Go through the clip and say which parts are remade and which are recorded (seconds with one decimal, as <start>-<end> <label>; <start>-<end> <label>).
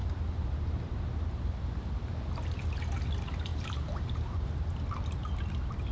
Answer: 0.0-1.0 remade; 1.0-3.5 recorded; 3.5-4.5 remade; 4.5-5.9 recorded